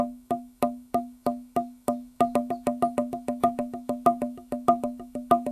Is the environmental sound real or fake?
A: fake